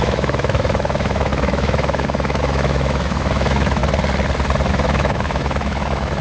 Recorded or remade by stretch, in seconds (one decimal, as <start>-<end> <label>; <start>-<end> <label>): 0.0-3.8 remade; 3.8-4.7 recorded; 4.7-6.2 remade